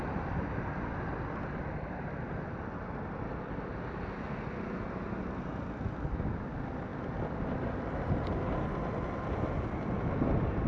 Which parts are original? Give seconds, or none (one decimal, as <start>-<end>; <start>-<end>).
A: 0.0-10.7

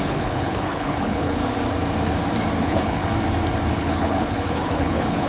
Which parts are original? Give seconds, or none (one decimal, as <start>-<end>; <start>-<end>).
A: 1.4-2.6; 3.0-3.7

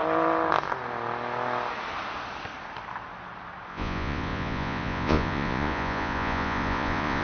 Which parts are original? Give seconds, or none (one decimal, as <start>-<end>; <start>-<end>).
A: 0.0-3.7